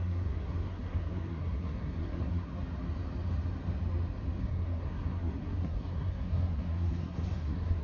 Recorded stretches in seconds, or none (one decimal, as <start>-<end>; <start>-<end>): 2.5-4.4